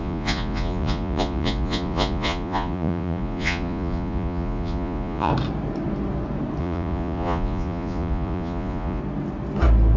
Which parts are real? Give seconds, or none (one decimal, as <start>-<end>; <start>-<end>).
5.3-6.6; 9.0-10.0